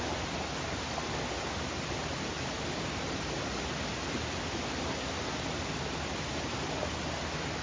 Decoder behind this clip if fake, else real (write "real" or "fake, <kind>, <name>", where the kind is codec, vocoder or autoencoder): real